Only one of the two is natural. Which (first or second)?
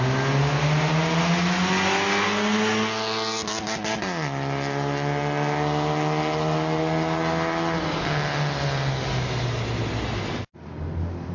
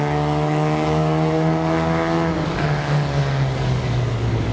first